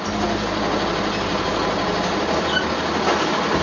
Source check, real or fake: real